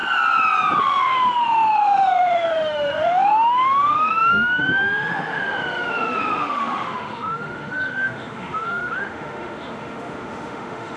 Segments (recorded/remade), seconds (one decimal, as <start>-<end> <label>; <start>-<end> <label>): 0.0-0.8 recorded; 0.8-11.0 remade